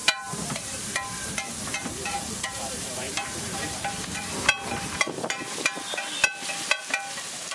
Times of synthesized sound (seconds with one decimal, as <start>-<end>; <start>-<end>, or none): 0.0-0.8; 1.7-5.4